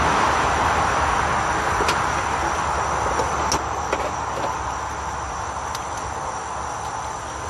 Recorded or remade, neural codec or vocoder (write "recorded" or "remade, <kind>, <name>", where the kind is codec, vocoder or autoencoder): recorded